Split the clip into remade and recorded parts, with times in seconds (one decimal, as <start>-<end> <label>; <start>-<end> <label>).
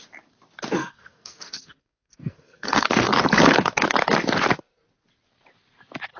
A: 0.0-0.8 recorded; 0.8-3.1 remade; 3.1-6.2 recorded